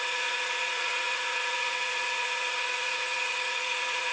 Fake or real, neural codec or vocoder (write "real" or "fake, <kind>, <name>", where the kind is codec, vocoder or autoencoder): fake, vocoder, Vocos